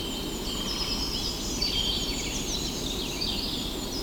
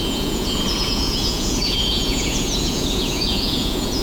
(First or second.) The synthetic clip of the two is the second